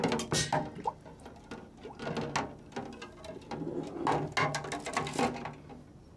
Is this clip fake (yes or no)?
no